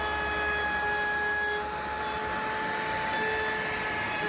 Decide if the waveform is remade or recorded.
recorded